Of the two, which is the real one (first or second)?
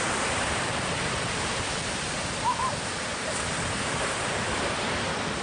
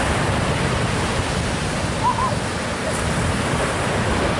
second